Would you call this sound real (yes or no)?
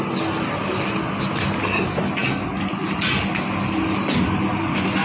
yes